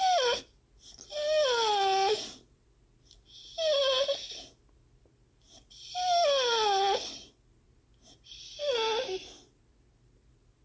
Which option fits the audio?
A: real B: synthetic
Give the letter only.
A